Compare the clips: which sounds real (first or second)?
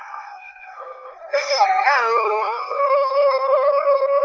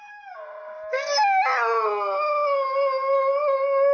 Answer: second